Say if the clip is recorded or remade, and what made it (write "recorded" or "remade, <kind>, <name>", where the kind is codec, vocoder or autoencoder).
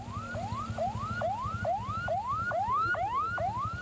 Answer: recorded